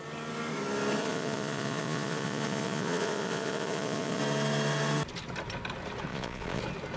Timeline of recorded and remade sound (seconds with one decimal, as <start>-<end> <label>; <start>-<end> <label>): 0.0-1.0 recorded; 1.0-4.2 remade; 4.2-6.1 recorded; 6.1-6.6 remade; 6.6-7.0 recorded